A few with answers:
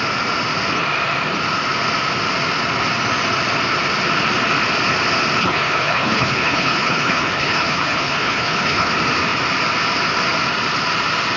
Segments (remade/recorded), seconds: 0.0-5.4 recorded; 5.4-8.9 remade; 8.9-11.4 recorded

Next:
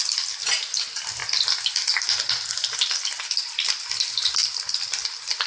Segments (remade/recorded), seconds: 0.0-5.5 recorded

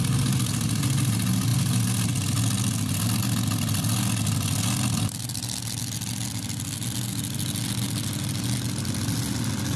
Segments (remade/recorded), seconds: 0.0-9.8 recorded